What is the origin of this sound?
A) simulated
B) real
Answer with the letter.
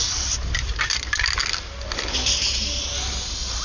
B